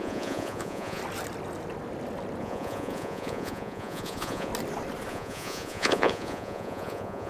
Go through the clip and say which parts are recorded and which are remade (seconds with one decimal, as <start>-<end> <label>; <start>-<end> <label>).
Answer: 0.0-1.0 remade; 1.0-2.4 recorded; 2.4-4.5 remade; 4.5-5.1 recorded; 5.1-7.3 remade